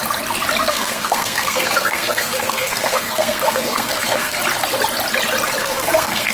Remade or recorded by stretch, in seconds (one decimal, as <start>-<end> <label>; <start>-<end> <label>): 0.0-0.6 recorded; 0.6-4.4 remade; 4.4-5.6 recorded; 5.6-6.3 remade